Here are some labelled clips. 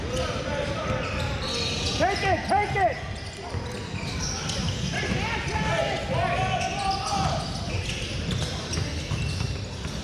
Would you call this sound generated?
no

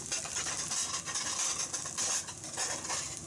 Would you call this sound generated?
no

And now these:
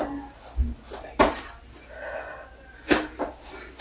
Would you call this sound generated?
no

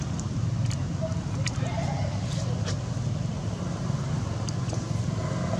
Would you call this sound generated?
no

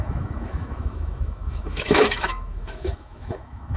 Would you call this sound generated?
yes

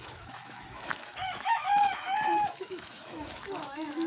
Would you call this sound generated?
yes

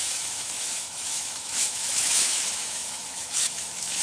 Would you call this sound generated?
yes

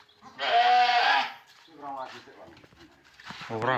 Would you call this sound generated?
no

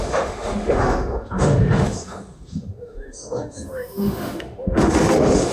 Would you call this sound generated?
yes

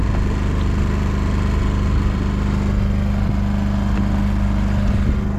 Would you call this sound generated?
no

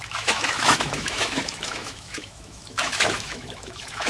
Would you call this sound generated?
yes